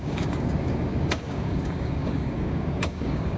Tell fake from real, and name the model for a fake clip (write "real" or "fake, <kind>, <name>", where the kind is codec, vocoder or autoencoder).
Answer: fake, codec, DAC